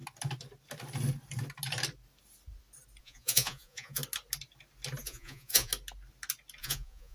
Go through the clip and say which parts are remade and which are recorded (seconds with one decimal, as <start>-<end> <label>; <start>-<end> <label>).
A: 0.0-3.0 recorded; 3.0-4.0 remade; 4.0-5.0 recorded; 5.0-5.7 remade; 5.7-6.6 recorded; 6.6-7.1 remade